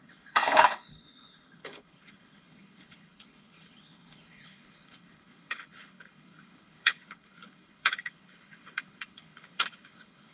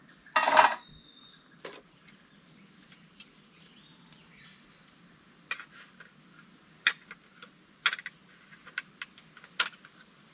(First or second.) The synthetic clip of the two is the first